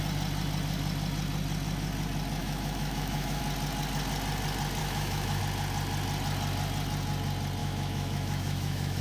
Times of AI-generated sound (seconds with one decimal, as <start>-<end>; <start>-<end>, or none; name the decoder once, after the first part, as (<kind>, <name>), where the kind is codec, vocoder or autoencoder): 2.4-3.4 (autoencoder, DAC-VAE); 4.8-5.4; 7.6-9.0